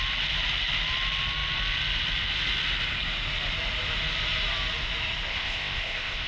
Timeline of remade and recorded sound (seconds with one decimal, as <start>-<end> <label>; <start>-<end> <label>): 0.0-5.3 recorded; 5.3-6.3 remade